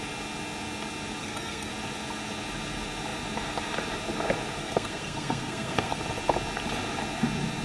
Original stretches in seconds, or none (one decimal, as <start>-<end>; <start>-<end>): 0.0-1.2; 1.7-4.6; 6.0-7.6